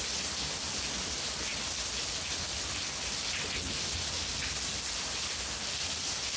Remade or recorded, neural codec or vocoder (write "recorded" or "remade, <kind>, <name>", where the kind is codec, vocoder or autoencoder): recorded